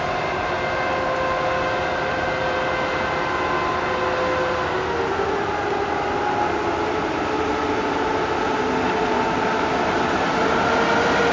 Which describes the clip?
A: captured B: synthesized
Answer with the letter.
A